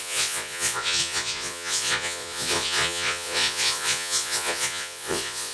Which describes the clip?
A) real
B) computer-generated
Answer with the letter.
B